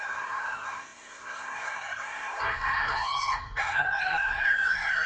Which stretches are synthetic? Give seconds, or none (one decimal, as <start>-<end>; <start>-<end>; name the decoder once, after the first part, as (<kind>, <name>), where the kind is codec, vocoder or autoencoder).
0.0-5.1 (codec, SNAC)